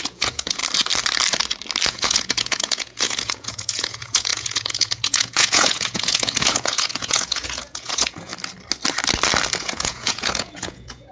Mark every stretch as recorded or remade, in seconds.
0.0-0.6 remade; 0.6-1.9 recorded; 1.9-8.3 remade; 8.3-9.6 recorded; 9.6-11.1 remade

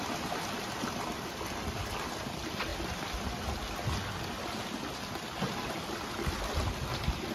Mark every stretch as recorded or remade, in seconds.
0.0-7.3 recorded

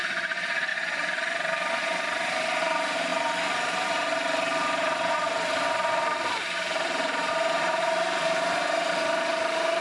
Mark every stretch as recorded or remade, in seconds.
0.0-0.7 remade; 0.7-1.8 recorded; 1.8-9.8 remade

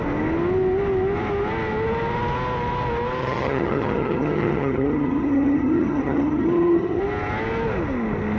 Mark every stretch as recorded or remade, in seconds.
0.0-3.2 recorded; 3.2-7.0 remade; 7.0-8.4 recorded

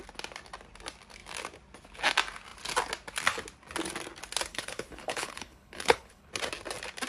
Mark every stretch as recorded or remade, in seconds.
0.0-4.5 recorded; 4.5-6.3 remade; 6.3-7.1 recorded

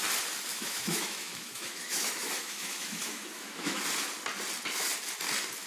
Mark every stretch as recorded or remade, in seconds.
0.0-0.5 recorded; 0.5-3.8 remade; 3.8-5.7 recorded

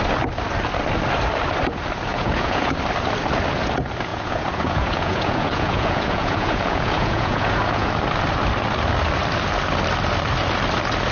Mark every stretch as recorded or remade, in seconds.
0.0-2.1 recorded; 2.1-2.7 remade; 2.7-4.1 recorded; 4.1-7.9 remade; 7.9-11.1 recorded

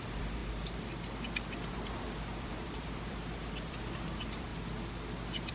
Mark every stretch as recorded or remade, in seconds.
0.0-0.4 remade; 0.4-1.7 recorded; 1.7-4.5 remade; 4.5-5.5 recorded